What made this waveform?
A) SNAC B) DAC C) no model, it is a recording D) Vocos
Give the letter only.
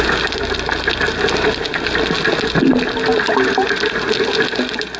C